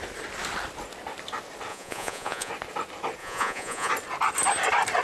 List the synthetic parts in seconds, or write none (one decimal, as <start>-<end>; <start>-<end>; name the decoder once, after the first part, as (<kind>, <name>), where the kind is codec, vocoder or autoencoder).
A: 1.7-2.5 (vocoder, Vocos); 3.2-3.9